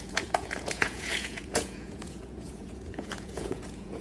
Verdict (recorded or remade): remade